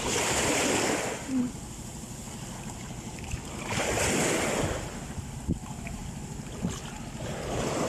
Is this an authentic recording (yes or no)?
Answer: yes